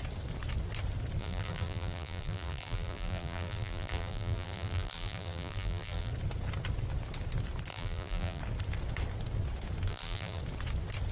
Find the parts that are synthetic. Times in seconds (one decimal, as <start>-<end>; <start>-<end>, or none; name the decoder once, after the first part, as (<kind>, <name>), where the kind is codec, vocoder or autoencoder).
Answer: 1.2-6.1 (vocoder, BigVGAN v2); 7.7-8.4; 9.9-10.4